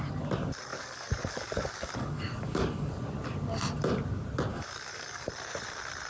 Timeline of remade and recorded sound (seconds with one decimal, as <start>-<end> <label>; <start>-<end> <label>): 0.0-0.7 recorded; 0.7-2.9 remade; 2.9-4.5 recorded; 4.5-5.3 remade; 5.3-6.1 recorded